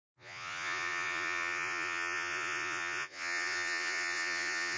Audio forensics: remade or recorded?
remade